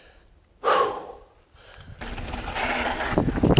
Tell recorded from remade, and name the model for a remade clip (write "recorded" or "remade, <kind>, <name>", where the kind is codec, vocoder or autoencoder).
recorded